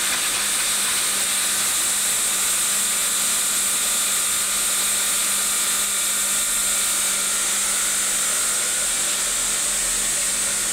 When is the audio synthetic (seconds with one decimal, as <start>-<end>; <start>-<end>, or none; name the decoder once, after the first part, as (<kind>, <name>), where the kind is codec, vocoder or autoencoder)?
none